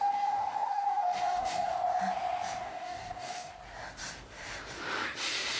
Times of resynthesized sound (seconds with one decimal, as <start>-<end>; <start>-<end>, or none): 0.0-1.7; 2.6-3.5

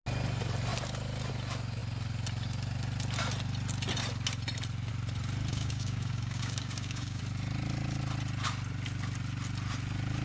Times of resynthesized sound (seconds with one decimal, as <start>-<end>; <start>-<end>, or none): 5.5-7.2

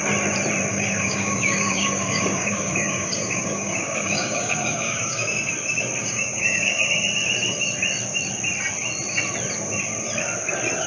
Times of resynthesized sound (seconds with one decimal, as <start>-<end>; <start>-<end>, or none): 0.7-5.5; 6.0-6.8